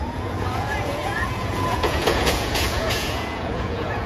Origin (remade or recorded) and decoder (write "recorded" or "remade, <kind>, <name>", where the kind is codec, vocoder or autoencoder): remade, vocoder, Vocos